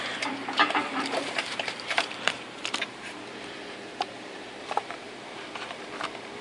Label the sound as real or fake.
fake